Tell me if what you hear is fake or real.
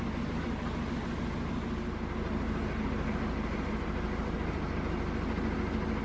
real